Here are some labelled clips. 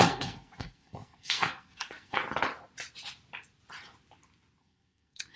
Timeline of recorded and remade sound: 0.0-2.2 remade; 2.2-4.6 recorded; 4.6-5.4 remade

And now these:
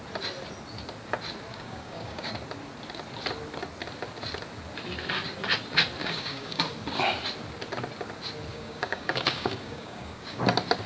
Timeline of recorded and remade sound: 0.0-1.5 recorded; 1.5-2.3 remade; 2.3-6.0 recorded; 6.0-6.6 remade; 6.6-8.5 recorded; 8.5-10.4 remade; 10.4-10.9 recorded

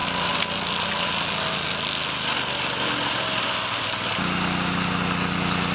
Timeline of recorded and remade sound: 0.0-5.7 recorded

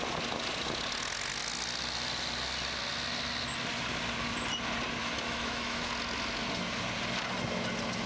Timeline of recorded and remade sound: 0.0-5.0 recorded; 5.0-5.9 remade; 5.9-8.1 recorded

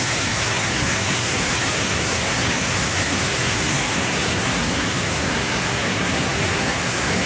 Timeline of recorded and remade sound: 0.0-7.3 remade

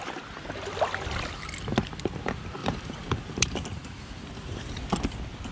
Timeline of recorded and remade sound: 0.0-2.6 recorded; 2.6-4.8 remade; 4.8-5.5 recorded

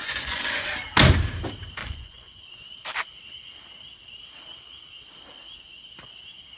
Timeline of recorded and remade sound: 0.0-0.7 remade; 0.7-1.8 recorded; 1.8-2.4 remade; 2.4-6.6 recorded